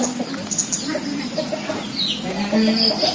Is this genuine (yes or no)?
yes